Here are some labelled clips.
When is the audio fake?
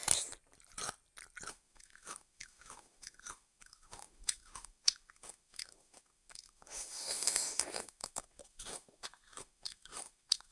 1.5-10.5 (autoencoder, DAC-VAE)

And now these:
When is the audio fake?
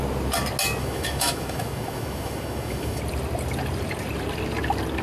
0.8-3.0 (autoencoder, DAC-VAE)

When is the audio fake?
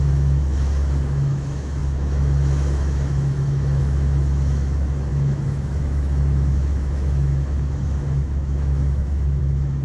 0.0-9.8 (autoencoder, DAC-VAE)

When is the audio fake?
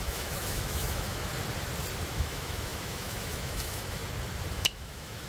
0.0-1.3 (autoencoder, DAC-VAE); 2.1-4.0; 4.5-5.3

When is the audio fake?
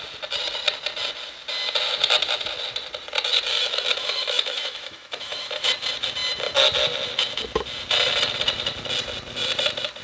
3.9-5.7 (autoencoder, DAC-VAE)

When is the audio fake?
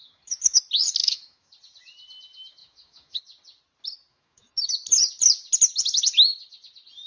0.0-0.6 (autoencoder, DAC-VAE); 1.0-1.5; 2.6-3.2; 4.1-4.7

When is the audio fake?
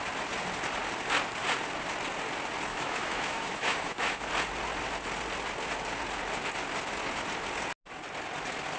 2.7-4.3 (autoencoder, DAC-VAE)